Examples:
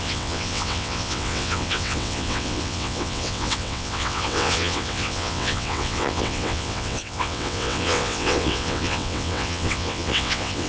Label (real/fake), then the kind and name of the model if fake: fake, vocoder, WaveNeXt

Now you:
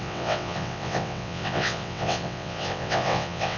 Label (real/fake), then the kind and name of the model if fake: fake, vocoder, WaveNeXt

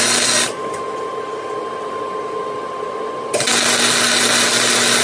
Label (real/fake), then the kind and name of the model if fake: real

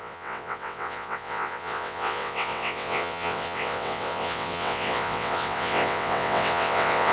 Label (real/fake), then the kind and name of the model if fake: fake, vocoder, WaveNeXt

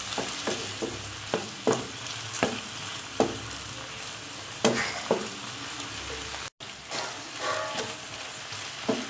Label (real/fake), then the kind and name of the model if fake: real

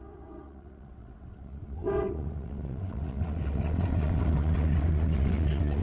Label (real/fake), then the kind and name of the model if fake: fake, vocoder, WaveNeXt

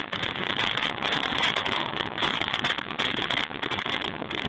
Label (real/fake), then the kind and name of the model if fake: fake, vocoder, WaveNeXt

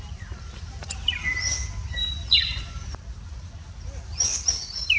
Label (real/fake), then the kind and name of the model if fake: real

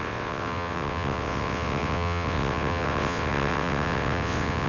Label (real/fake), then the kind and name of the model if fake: fake, vocoder, WaveNeXt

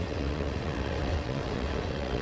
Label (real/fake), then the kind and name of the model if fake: fake, vocoder, WaveNeXt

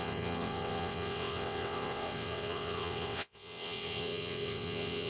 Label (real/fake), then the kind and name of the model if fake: fake, vocoder, WaveNeXt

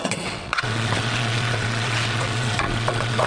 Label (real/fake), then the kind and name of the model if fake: fake, vocoder, WaveNeXt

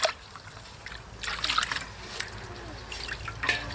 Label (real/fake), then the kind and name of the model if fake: real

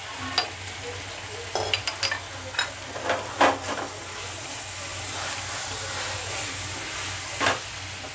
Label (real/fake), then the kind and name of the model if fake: real